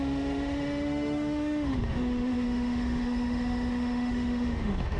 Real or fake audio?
fake